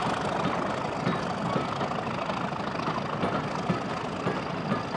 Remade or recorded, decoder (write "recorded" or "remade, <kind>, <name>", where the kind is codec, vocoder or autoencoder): recorded